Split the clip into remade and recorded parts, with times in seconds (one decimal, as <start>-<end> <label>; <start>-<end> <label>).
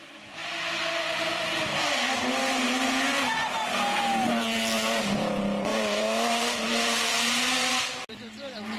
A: 0.0-0.4 recorded; 0.4-2.9 remade; 2.9-5.7 recorded; 5.7-7.7 remade; 7.7-8.8 recorded